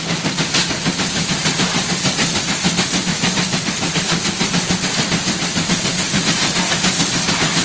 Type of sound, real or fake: real